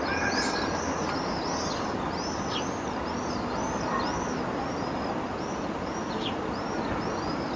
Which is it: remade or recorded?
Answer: recorded